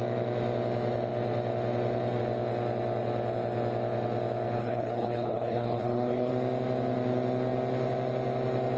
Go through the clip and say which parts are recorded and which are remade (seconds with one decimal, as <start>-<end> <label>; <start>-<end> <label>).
0.0-4.6 recorded; 4.6-6.3 remade; 6.3-8.8 recorded